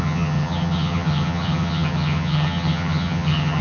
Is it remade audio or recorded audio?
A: remade